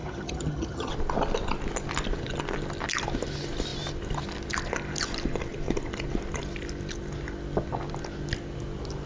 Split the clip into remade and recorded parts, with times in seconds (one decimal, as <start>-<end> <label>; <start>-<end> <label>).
0.0-0.9 remade; 0.9-9.1 recorded